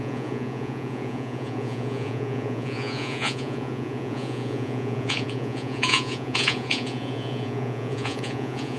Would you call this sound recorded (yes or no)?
no